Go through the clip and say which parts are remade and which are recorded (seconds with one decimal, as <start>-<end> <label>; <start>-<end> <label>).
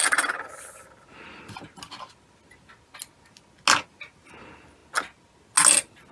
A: 0.0-6.1 recorded